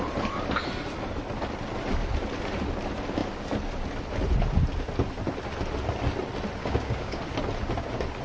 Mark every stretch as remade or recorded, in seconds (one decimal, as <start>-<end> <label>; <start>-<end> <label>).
0.0-6.6 recorded; 6.6-7.2 remade; 7.2-8.2 recorded